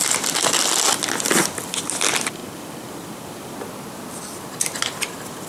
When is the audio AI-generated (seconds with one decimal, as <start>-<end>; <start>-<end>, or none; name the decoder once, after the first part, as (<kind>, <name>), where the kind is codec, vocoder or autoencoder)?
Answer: none